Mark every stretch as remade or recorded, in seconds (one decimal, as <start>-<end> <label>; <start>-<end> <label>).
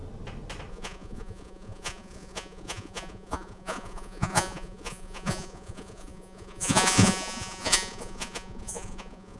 0.0-0.7 recorded; 0.7-9.4 remade